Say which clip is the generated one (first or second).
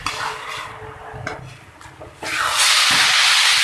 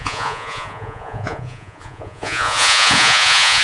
second